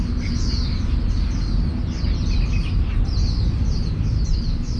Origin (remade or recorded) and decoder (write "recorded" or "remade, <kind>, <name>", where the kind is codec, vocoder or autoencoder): recorded